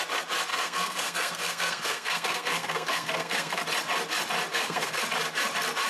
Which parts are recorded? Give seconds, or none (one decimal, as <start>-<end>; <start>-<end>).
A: 0.0-0.5; 3.6-4.5; 5.0-5.9